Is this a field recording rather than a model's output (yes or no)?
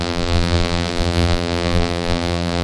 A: no